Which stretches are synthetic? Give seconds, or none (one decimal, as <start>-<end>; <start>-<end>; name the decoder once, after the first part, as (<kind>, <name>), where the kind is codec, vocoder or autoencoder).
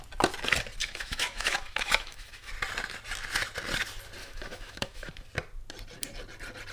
0.8-2.5 (autoencoder, DAC-VAE); 4.2-5.1